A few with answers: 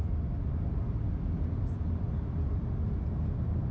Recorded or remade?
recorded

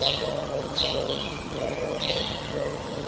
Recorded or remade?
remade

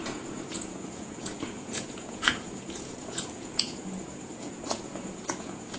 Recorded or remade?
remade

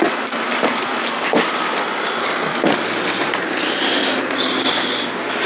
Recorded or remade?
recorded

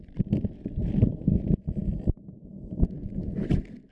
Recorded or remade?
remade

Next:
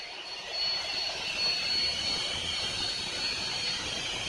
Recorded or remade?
recorded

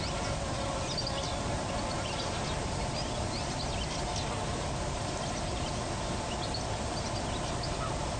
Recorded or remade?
recorded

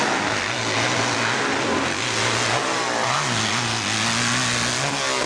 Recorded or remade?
recorded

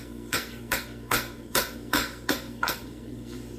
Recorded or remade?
remade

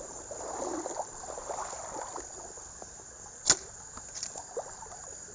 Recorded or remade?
recorded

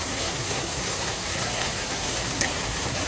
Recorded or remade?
remade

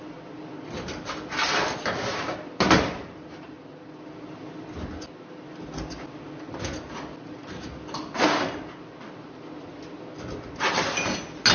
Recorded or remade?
recorded